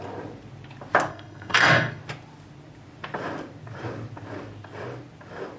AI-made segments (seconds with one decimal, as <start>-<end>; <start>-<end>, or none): 1.1-2.0